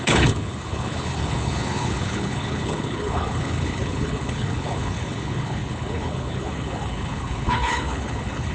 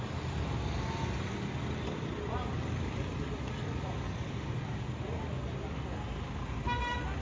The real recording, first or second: second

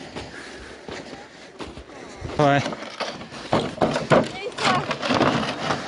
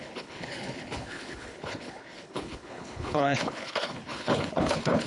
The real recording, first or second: first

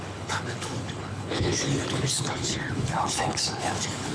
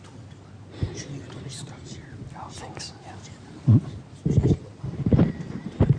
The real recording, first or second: second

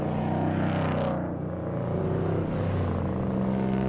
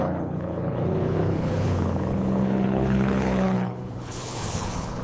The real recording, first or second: first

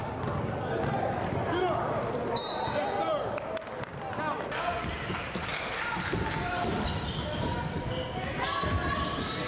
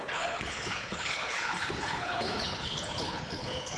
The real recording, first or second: first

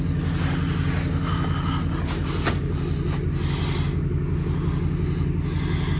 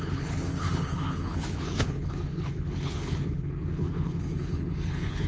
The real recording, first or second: first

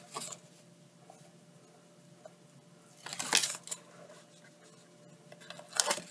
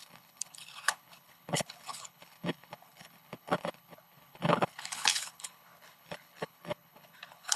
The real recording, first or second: first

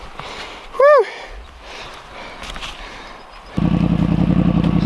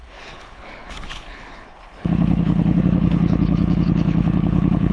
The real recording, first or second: first